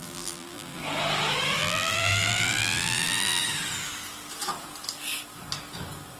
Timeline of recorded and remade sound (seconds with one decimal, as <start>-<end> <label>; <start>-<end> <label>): 0.0-0.8 remade; 0.8-1.6 recorded; 1.6-3.4 remade; 3.4-6.2 recorded